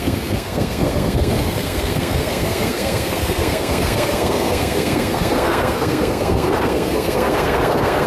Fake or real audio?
fake